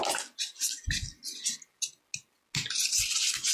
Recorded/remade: recorded